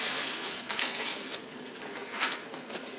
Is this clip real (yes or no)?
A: no